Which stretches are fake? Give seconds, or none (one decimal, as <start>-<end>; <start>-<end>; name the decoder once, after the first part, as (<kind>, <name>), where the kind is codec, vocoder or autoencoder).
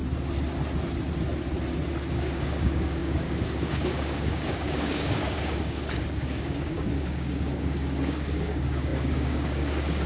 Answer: 2.1-10.1 (codec, DAC)